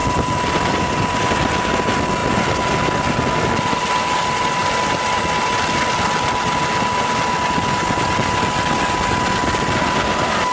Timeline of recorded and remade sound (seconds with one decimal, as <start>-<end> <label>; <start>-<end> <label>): 0.0-1.3 remade; 1.3-10.5 recorded